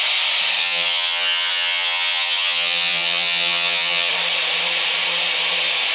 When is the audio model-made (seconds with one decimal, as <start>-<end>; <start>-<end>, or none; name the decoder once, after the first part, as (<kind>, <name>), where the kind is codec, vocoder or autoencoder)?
0.6-4.1 (vocoder, HiFi-GAN)